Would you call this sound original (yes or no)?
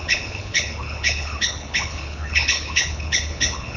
no